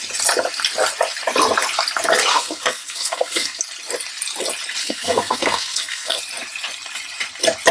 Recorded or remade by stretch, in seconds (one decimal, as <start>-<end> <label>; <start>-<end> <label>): 0.0-2.3 recorded; 2.3-3.6 remade; 3.6-4.8 recorded; 4.8-6.2 remade; 6.2-7.7 recorded